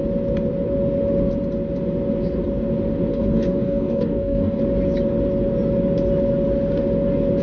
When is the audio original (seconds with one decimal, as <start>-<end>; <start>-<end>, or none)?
0.0-3.1; 4.6-7.4